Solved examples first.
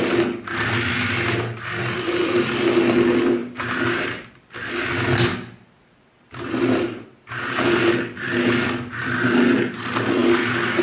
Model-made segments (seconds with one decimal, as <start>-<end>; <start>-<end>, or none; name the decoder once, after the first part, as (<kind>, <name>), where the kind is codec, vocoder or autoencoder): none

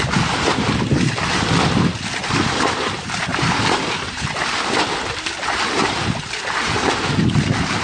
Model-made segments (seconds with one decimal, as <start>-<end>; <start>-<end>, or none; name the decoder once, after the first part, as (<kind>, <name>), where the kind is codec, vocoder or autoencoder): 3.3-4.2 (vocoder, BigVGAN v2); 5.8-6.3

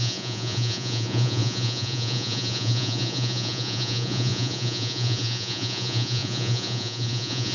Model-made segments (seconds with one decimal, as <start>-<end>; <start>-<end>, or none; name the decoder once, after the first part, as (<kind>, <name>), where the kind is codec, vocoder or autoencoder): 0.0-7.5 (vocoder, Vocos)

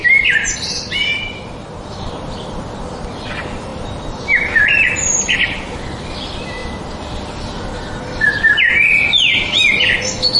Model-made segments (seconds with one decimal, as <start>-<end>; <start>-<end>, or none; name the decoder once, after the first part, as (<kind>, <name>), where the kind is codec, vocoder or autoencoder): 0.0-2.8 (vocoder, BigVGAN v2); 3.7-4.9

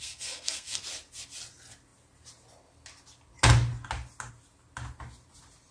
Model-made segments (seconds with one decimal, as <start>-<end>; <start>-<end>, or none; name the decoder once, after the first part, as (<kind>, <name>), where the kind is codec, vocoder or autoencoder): 0.0-0.8 (codec, SNAC)